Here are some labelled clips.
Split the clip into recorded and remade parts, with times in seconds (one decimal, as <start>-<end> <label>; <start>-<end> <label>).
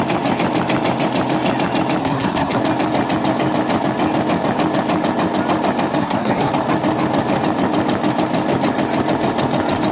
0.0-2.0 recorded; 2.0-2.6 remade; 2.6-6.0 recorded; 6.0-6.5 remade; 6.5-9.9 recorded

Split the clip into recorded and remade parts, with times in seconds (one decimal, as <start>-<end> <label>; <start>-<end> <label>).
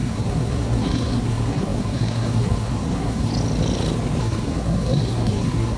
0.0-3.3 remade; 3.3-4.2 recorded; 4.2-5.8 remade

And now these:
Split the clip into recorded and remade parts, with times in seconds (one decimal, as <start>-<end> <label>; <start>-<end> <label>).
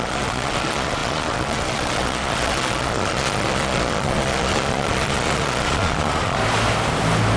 0.0-6.4 remade; 6.4-7.4 recorded